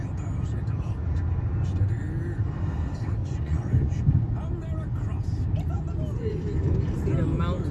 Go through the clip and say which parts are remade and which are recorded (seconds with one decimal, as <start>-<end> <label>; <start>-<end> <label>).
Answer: 0.0-3.2 recorded; 3.2-4.0 remade; 4.0-7.7 recorded